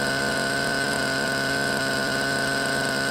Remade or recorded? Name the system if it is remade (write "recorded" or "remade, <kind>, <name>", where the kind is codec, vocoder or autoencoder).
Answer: remade, vocoder, BigVGAN v2